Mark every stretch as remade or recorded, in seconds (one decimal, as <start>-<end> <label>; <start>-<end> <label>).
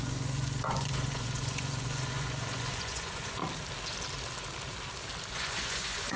0.0-3.4 remade; 3.4-5.3 recorded; 5.3-6.2 remade